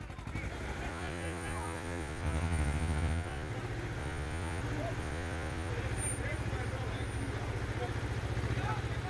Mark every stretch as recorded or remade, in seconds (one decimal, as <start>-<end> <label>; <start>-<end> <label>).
0.0-0.9 recorded; 0.9-3.5 remade; 3.5-4.0 recorded; 4.0-4.6 remade; 4.6-5.0 recorded; 5.0-5.7 remade; 5.7-9.1 recorded